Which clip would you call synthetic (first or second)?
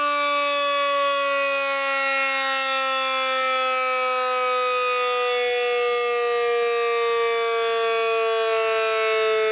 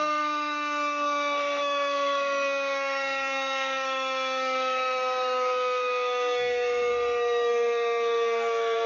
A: second